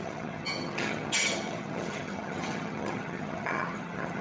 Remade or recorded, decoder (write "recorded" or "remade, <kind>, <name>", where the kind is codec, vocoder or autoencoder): remade, vocoder, HiFi-GAN